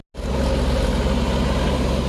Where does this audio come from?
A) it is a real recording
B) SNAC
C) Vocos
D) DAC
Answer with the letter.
A